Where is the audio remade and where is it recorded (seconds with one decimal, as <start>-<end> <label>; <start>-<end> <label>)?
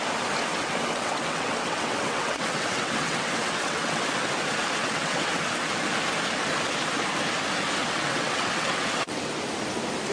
0.0-0.5 recorded; 0.5-4.0 remade; 4.0-4.8 recorded; 4.8-5.4 remade; 5.4-7.8 recorded; 7.8-9.3 remade; 9.3-10.1 recorded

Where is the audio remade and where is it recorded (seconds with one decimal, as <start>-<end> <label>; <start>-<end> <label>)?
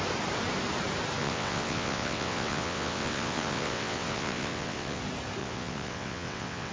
0.0-1.2 recorded; 1.2-5.0 remade; 5.0-5.4 recorded; 5.4-6.7 remade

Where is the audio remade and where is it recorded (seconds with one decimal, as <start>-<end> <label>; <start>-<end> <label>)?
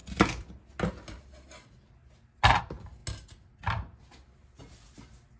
0.0-5.4 recorded